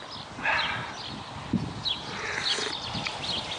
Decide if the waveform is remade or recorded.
recorded